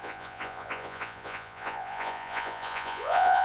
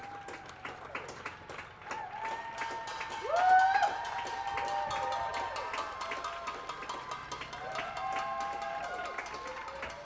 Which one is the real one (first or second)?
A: second